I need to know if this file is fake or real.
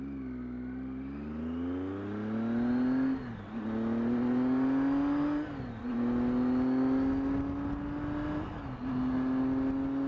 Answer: real